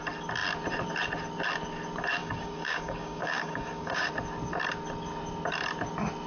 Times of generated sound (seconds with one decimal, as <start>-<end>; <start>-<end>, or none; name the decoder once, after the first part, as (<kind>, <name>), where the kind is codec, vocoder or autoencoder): 2.2-4.1 (codec, DAC)